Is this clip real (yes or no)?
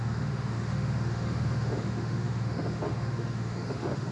no